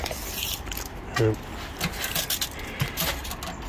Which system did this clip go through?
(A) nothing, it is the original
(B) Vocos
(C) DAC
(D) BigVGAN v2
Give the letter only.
A